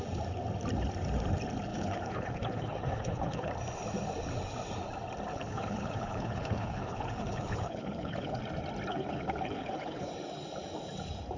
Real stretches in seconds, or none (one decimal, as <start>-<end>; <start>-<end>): 0.0-1.7; 3.5-5.3; 8.4-8.9; 10.1-11.4